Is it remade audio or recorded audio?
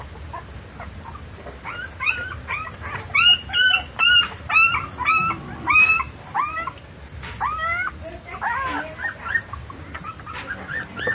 recorded